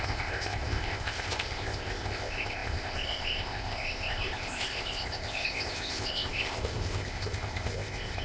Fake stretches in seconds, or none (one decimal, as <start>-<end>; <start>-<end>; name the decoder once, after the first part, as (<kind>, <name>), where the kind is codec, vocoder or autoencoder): 0.0-8.2 (codec, ZipCodec)